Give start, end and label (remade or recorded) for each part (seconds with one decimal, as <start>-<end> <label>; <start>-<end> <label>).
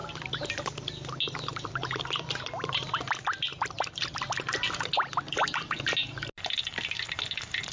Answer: 0.0-7.7 recorded